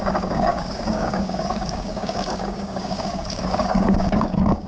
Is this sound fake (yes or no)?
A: yes